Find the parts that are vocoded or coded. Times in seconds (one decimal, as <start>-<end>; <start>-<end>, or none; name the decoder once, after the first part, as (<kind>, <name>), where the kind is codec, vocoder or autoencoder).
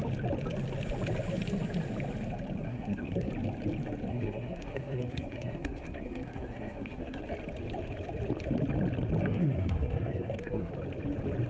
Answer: 2.6-3.3 (codec, SNAC); 4.1-7.2; 9.2-10.7